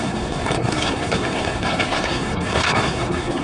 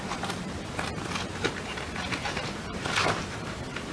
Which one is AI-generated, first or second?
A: first